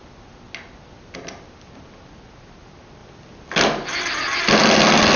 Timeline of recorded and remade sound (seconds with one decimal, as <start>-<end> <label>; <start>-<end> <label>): 0.0-5.2 recorded